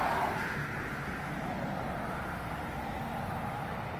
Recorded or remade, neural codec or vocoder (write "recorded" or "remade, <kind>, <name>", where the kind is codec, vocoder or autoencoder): recorded